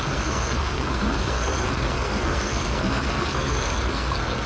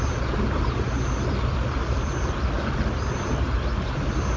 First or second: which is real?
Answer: second